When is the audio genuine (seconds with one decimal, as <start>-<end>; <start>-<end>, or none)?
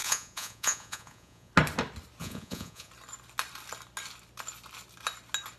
1.5-2.2; 2.9-5.6